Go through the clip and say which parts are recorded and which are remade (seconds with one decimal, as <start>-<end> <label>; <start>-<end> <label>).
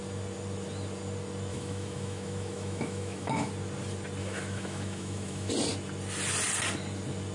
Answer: 0.0-1.5 recorded; 1.5-3.5 remade; 3.5-4.2 recorded; 4.2-5.5 remade; 5.5-7.3 recorded